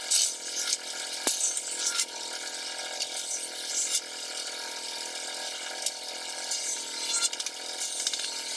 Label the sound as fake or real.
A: real